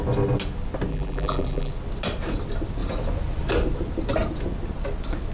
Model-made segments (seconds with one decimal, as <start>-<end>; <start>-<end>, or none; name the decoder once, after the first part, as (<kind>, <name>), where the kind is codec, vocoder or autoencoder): 0.9-1.7 (vocoder, BigVGAN v2)